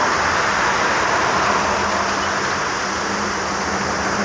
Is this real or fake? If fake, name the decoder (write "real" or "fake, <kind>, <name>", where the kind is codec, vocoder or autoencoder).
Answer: real